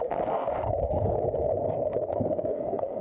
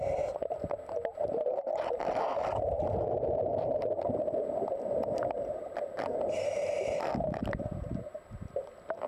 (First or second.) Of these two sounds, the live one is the second